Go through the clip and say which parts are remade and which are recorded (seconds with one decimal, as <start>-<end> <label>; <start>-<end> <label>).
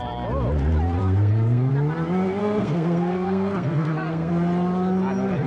0.0-1.0 recorded; 1.0-1.7 remade; 1.7-2.4 recorded; 2.4-4.3 remade; 4.3-5.5 recorded